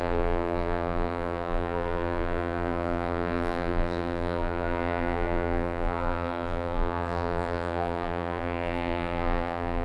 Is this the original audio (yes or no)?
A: no